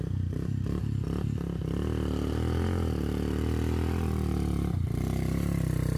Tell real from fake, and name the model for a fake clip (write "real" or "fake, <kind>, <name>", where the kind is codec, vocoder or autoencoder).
real